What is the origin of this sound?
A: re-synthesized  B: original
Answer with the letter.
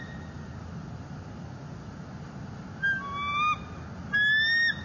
B